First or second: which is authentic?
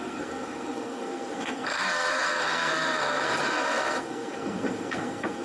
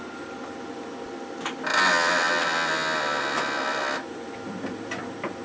second